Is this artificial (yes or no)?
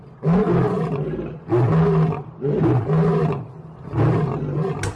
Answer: no